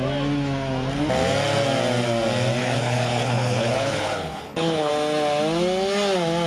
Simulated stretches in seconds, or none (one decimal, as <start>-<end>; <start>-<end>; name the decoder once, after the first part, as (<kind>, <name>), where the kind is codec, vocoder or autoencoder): 2.6-4.9 (codec, HILCodec)